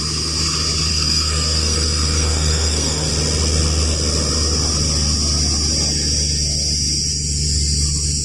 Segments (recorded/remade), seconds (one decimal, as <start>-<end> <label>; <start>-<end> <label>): 0.0-0.9 recorded; 0.9-3.1 remade; 3.1-8.2 recorded